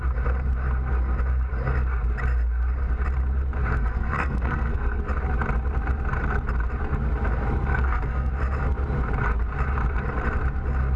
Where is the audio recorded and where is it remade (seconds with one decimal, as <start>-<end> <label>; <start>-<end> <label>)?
0.0-3.7 recorded; 3.7-5.0 remade; 5.0-7.7 recorded; 7.7-8.3 remade; 8.3-11.0 recorded